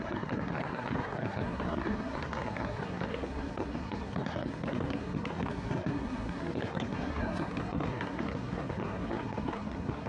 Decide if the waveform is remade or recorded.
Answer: remade